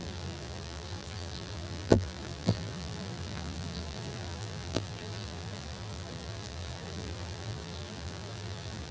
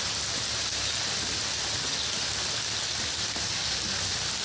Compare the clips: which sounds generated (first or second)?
first